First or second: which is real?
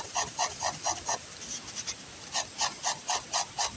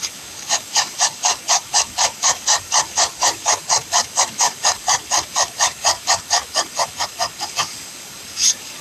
first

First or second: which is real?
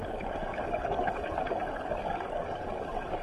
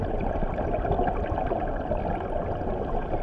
second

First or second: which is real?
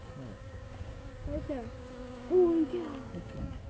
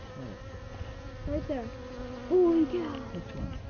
second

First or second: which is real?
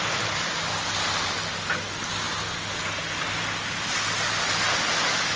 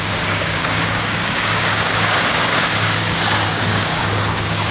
first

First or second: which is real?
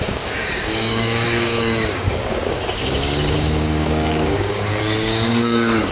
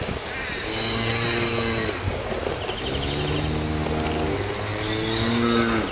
second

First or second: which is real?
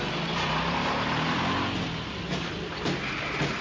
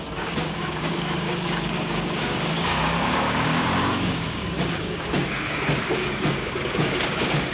first